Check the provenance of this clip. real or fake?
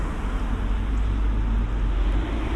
real